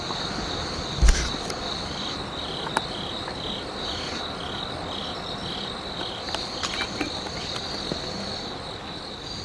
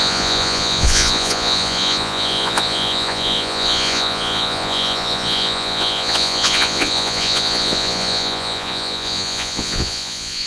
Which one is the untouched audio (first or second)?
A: first